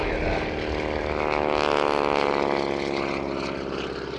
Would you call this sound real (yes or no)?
yes